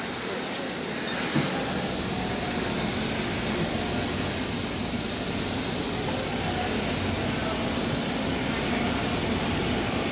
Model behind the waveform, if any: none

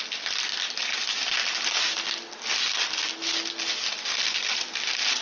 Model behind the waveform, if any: none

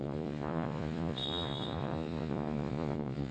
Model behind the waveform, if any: vocoder, Vocos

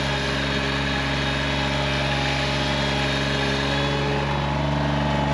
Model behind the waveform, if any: none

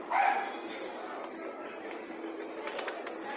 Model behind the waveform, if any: none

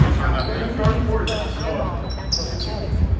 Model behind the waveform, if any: none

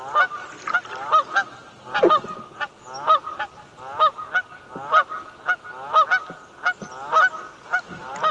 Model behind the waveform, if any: none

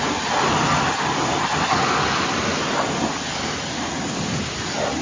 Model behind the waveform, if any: none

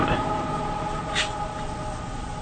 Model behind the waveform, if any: none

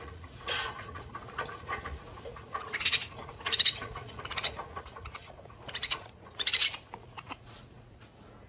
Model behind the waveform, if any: vocoder, Vocos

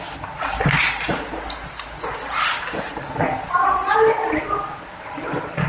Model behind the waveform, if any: none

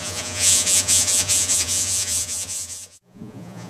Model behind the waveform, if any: vocoder, Vocos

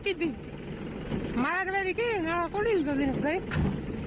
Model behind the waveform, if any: none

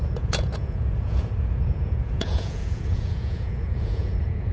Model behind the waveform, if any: vocoder, Vocos